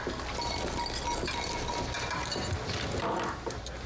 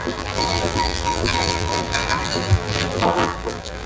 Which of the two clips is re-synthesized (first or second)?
second